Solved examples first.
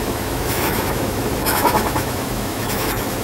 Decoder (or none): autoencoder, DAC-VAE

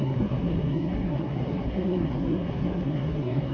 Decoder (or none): codec, SNAC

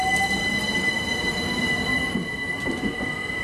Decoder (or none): none